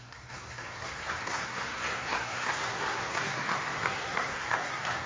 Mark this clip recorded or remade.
remade